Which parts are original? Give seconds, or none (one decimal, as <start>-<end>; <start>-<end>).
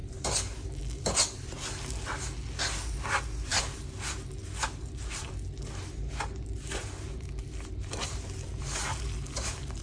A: 0.8-9.8